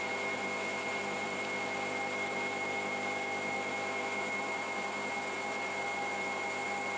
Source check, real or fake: fake